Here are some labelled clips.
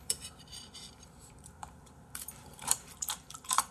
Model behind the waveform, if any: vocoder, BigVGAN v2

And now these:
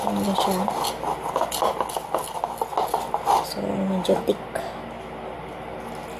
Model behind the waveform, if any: none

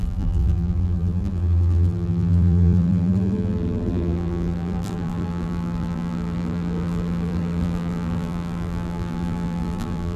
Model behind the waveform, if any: vocoder, BigVGAN v2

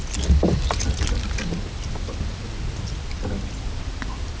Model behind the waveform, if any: none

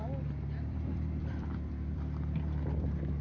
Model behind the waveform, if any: vocoder, BigVGAN v2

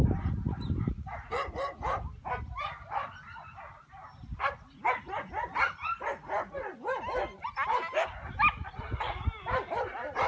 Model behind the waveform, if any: none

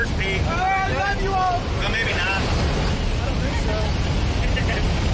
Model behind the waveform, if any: none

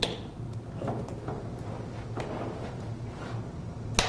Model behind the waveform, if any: none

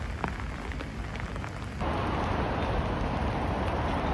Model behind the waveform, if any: none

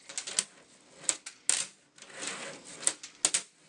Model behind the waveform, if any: none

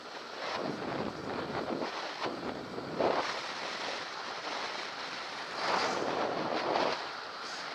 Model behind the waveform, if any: vocoder, BigVGAN v2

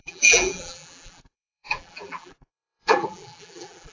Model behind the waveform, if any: vocoder, BigVGAN v2